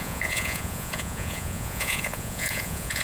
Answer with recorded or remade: remade